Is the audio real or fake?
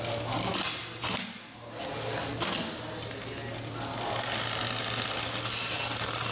real